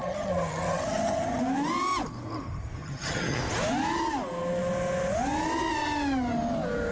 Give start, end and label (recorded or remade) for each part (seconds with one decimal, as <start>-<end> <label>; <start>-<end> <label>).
0.0-1.4 remade; 1.4-2.8 recorded; 2.8-3.4 remade; 3.4-6.9 recorded